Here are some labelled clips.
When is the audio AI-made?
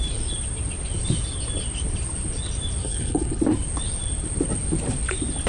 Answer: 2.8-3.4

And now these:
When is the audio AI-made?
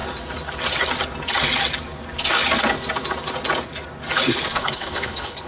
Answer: 4.5-5.5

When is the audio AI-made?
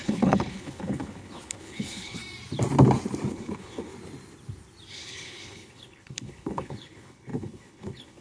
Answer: 0.0-2.2; 3.3-3.9; 4.9-8.2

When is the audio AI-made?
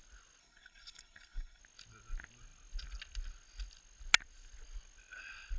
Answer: 0.4-1.6